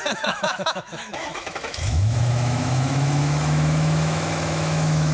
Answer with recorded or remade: remade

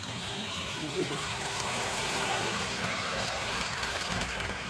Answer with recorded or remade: remade